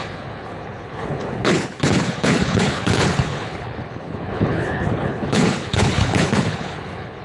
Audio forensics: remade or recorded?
remade